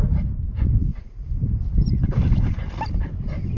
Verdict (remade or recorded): recorded